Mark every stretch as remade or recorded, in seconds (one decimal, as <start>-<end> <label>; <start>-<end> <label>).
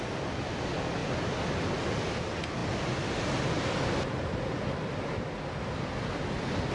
0.0-6.7 recorded